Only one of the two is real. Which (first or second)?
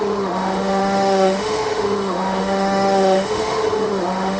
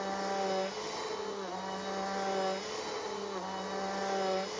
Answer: second